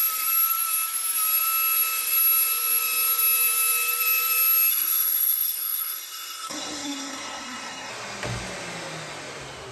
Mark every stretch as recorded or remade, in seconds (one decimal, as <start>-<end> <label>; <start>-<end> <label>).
0.0-4.7 recorded; 4.7-7.9 remade; 7.9-9.7 recorded